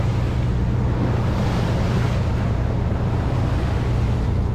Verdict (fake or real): real